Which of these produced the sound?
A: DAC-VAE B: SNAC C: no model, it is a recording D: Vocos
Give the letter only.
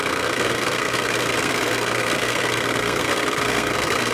B